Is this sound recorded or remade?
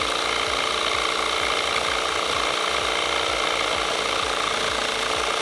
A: recorded